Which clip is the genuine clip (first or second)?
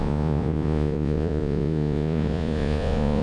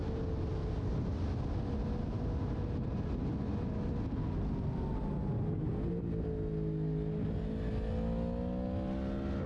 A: second